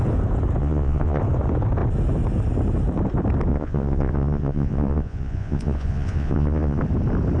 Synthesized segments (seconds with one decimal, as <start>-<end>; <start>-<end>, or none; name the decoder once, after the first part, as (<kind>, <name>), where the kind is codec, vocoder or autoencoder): 0.6-1.2 (vocoder, Vocos); 3.5-6.8